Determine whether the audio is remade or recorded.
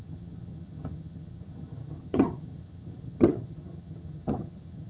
remade